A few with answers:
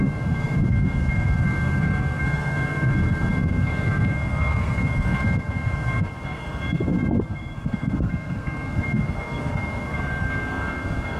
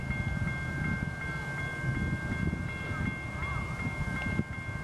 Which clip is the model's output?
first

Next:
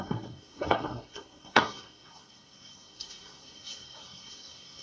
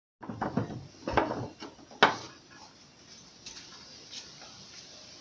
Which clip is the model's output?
first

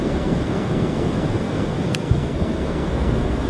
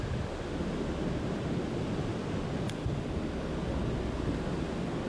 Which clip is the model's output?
first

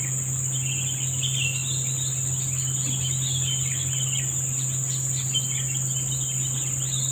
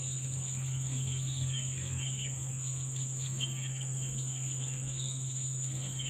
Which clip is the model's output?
second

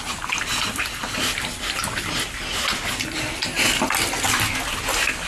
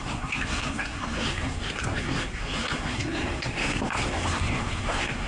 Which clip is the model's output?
second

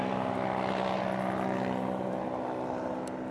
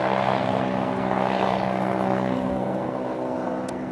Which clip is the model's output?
second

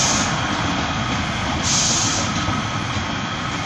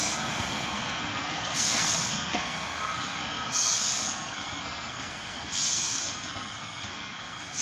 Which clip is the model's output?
second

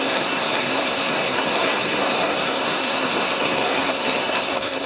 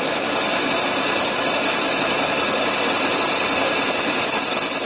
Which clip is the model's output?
first